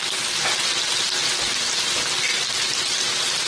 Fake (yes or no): no